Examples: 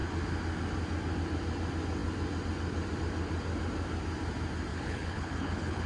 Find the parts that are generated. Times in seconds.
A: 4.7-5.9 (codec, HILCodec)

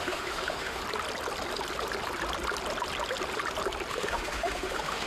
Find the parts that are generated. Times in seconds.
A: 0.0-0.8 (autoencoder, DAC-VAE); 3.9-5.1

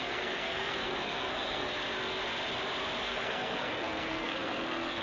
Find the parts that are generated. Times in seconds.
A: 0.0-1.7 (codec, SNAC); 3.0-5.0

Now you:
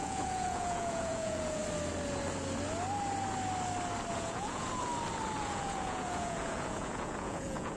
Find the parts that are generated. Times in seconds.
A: 0.0-1.6 (vocoder, Vocos); 4.1-4.9; 5.4-7.8